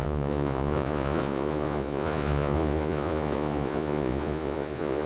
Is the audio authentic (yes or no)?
no